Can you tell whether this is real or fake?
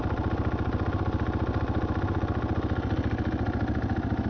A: real